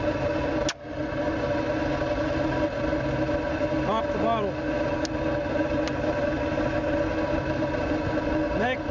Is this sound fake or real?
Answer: real